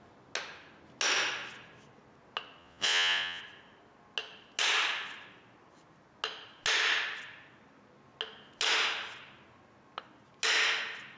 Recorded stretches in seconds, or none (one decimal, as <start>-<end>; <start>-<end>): 0.0-2.6; 3.4-11.2